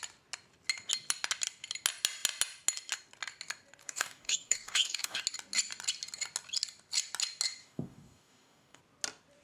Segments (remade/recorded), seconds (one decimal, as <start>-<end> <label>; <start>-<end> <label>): 0.0-3.8 recorded; 3.8-5.2 remade; 5.2-7.6 recorded; 7.6-8.8 remade; 8.8-9.4 recorded